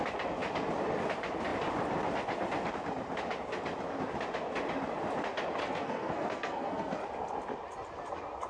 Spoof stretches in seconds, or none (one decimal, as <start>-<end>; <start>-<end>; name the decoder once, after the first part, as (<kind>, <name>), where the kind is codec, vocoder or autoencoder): 5.6-7.0 (codec, SNAC)